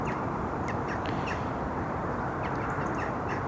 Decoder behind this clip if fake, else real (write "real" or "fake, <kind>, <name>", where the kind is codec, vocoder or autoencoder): fake, vocoder, BigVGAN v2